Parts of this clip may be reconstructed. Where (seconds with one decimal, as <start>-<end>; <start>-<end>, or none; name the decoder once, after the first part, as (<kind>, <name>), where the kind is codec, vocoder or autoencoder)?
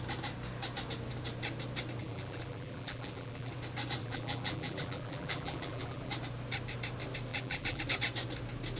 2.0-3.5 (vocoder, BigVGAN v2); 4.0-6.1; 7.3-7.8